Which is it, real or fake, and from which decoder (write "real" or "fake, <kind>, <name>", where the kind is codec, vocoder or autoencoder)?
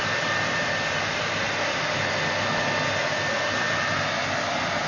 real